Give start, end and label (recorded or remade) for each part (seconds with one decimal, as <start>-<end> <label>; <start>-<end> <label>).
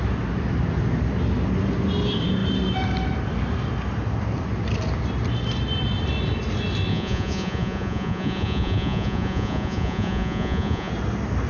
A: 0.0-6.9 recorded; 6.9-10.9 remade; 10.9-11.5 recorded